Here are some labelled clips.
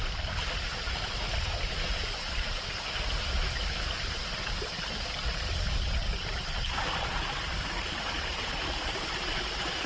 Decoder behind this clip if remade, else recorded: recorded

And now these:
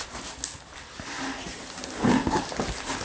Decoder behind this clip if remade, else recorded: recorded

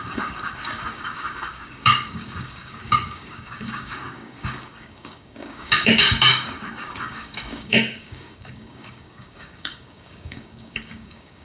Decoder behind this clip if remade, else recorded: remade, codec, DAC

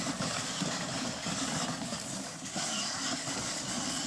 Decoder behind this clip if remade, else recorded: remade, codec, DAC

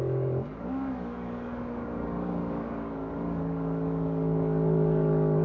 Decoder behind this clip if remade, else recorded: remade, codec, DAC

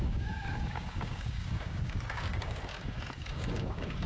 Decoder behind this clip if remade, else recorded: remade, codec, DAC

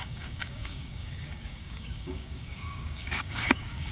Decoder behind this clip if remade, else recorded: remade, codec, DAC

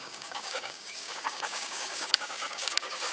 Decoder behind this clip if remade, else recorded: remade, codec, DAC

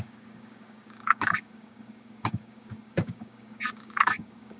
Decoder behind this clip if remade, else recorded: remade, codec, DAC